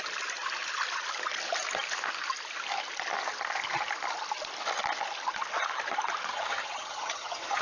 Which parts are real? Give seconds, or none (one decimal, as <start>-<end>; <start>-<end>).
0.0-6.3

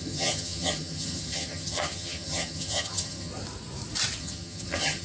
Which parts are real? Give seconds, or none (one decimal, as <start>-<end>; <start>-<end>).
3.3-4.2

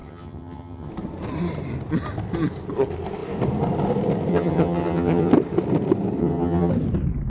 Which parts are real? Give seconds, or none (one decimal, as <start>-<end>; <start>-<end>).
0.9-4.3; 5.3-6.2; 6.7-7.3